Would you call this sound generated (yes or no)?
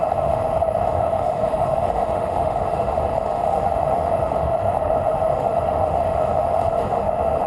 yes